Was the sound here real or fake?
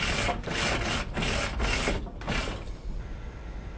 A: real